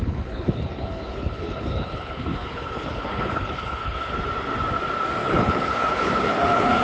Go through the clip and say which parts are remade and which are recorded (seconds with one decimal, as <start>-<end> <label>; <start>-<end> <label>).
0.0-4.1 remade; 4.1-5.2 recorded; 5.2-6.8 remade